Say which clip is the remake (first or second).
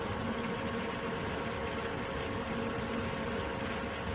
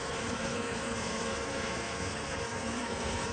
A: second